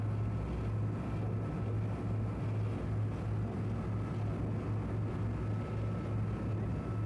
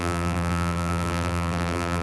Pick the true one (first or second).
first